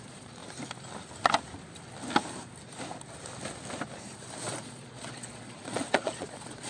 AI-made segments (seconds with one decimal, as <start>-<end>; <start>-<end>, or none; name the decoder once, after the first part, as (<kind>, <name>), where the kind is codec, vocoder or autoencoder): 0.0-0.4 (vocoder, Vocos); 4.4-6.7